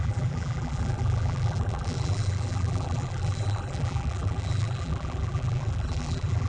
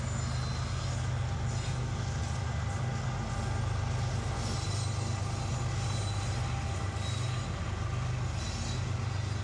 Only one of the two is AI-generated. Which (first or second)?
first